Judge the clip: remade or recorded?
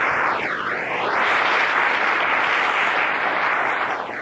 recorded